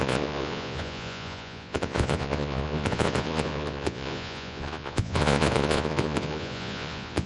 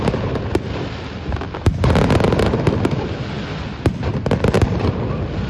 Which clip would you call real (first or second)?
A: second